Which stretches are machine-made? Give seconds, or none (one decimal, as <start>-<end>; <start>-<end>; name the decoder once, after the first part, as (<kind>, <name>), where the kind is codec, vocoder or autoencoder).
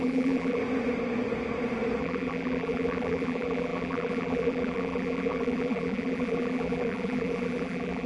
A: 0.0-0.6 (vocoder, BigVGAN v2); 2.0-8.1